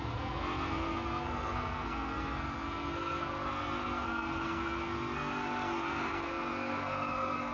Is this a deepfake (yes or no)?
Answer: yes